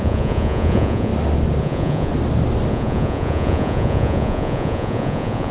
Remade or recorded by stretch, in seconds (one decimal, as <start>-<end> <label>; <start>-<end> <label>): 0.0-1.1 remade; 1.1-1.6 recorded; 1.6-2.1 remade; 2.1-2.7 recorded; 2.7-5.5 remade